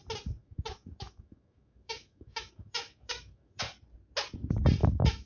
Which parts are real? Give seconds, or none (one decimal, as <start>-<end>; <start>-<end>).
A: 0.0-0.4; 3.6-4.8